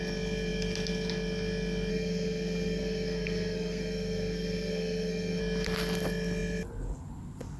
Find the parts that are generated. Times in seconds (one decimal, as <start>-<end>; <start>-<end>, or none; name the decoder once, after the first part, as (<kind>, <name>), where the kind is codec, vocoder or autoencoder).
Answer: 1.9-5.4 (codec, SNAC)